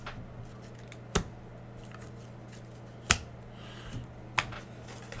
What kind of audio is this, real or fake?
real